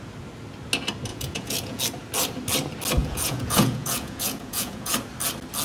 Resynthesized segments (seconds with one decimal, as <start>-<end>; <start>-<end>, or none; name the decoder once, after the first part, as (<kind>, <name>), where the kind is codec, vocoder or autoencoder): 1.1-1.8 (vocoder, Vocos); 3.0-4.9